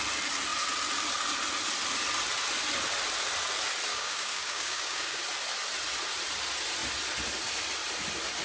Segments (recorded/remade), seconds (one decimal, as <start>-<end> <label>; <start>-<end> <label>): 0.0-3.9 recorded; 3.9-5.2 remade; 5.2-8.4 recorded